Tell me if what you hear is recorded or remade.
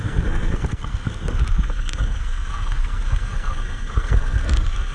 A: remade